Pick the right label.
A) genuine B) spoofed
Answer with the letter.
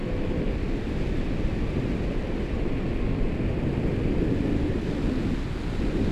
A